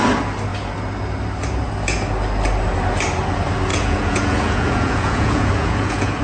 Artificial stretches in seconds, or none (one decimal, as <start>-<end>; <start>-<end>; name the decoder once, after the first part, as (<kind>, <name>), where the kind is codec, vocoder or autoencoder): 3.7-6.2 (vocoder, Vocos)